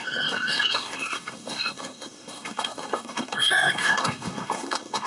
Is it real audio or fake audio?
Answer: fake